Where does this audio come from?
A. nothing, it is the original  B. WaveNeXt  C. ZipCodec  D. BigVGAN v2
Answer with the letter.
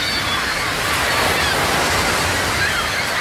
A